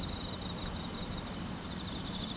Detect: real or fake real